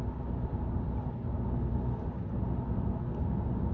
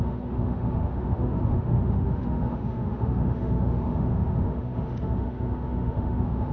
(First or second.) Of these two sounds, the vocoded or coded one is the second